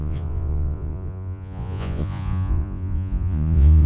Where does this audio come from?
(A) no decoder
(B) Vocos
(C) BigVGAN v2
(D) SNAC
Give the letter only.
B